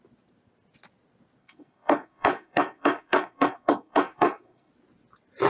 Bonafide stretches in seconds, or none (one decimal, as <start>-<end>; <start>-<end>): 0.0-1.4; 4.7-5.5